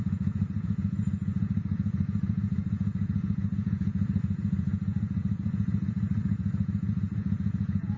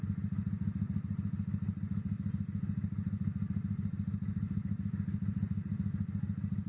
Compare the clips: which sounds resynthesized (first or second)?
first